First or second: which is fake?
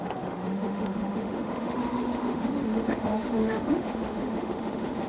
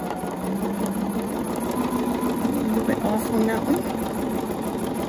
first